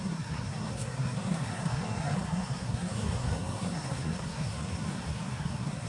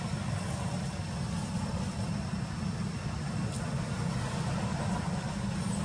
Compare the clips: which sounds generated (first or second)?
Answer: first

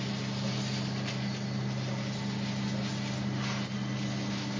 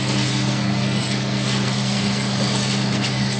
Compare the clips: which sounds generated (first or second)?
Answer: second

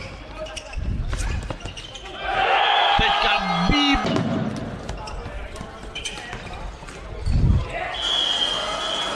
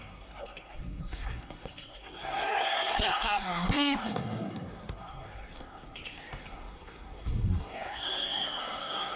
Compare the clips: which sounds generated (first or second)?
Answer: second